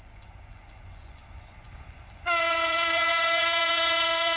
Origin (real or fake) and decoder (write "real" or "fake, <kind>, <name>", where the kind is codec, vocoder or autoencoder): fake, vocoder, Vocos